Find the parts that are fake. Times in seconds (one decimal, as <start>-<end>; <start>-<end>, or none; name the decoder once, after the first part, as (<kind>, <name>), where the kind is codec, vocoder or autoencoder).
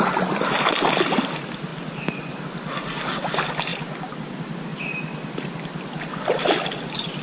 1.7-2.4 (vocoder, BigVGAN v2); 3.7-4.2